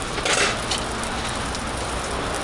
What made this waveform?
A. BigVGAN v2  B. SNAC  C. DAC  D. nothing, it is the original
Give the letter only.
D